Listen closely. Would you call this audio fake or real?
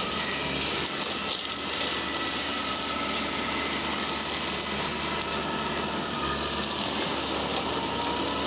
real